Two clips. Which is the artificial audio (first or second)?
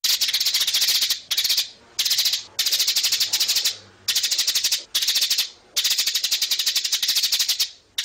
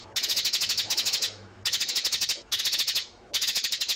second